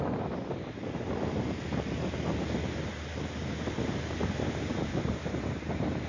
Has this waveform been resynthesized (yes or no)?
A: yes